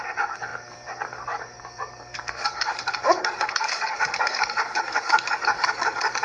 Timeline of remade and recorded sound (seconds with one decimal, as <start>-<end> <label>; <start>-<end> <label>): 0.0-6.2 remade